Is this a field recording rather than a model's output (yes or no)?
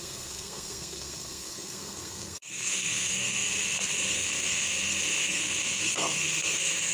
no